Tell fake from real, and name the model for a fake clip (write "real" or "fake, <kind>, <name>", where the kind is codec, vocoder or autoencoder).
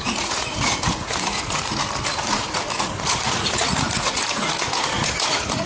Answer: fake, vocoder, Vocos